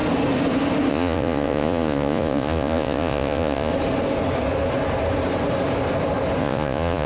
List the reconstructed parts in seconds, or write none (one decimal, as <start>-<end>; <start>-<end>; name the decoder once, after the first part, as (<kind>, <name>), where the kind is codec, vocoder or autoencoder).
0.9-3.7 (vocoder, Vocos); 6.4-7.1